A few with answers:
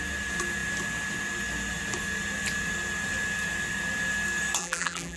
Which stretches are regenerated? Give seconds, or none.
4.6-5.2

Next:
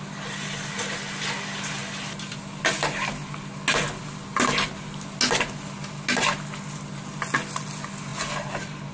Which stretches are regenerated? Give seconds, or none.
none

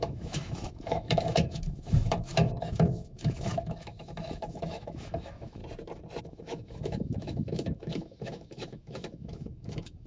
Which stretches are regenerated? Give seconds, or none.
0.0-5.6; 6.2-10.1

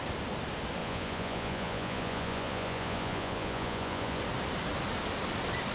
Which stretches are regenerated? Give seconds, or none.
0.8-4.2